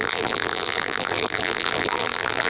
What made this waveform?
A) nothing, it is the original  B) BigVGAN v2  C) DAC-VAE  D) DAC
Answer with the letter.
B